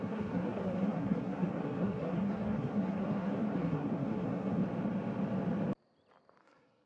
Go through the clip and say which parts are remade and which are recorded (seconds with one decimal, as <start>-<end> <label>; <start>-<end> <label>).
0.0-4.6 remade; 4.6-6.4 recorded; 6.4-6.9 remade